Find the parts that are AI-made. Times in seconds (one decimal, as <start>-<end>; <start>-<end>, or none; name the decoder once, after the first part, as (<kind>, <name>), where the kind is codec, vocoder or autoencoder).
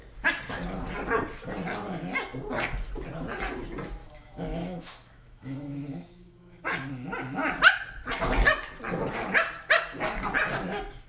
4.0-6.9 (autoencoder, DAC-VAE)